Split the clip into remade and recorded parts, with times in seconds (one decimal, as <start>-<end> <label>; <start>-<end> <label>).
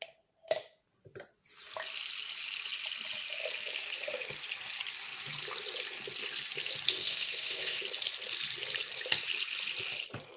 0.0-6.9 recorded; 6.9-7.8 remade; 7.8-10.4 recorded